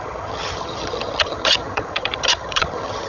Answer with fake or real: fake